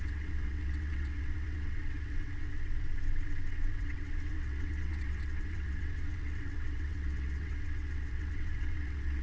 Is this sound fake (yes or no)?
yes